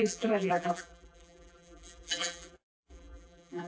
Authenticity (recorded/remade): remade